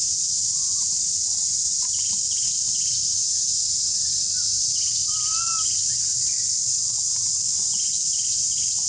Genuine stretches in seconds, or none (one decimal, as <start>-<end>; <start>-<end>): 0.0-8.9